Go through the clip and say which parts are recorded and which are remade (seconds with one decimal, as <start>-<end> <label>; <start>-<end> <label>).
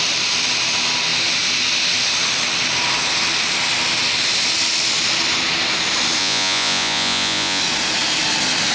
0.0-6.2 recorded; 6.2-7.6 remade; 7.6-8.7 recorded